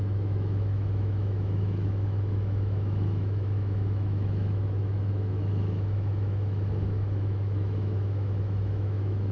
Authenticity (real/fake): fake